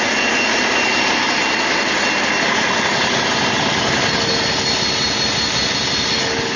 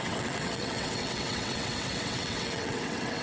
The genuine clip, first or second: first